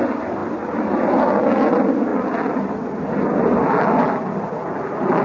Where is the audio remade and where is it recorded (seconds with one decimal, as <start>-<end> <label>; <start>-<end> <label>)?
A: 0.0-0.4 recorded; 0.4-1.2 remade; 1.2-2.1 recorded; 2.1-3.1 remade; 3.1-5.2 recorded